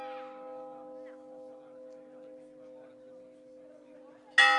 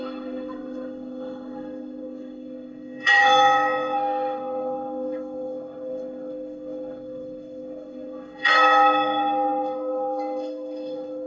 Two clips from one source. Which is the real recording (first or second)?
first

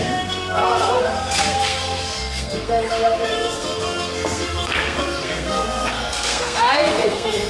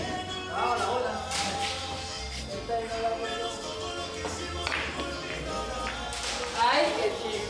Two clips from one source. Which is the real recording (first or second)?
second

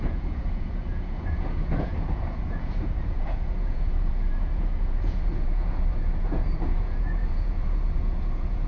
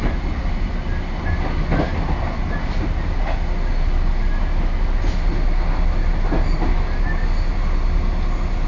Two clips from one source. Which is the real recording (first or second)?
second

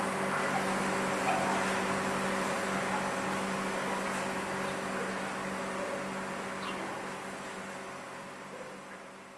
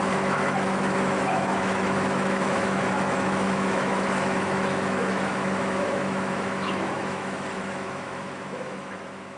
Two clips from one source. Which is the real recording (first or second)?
first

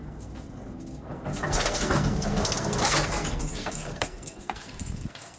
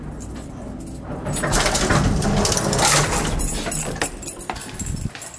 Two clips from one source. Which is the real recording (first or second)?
second